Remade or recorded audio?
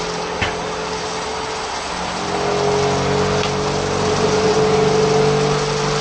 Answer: recorded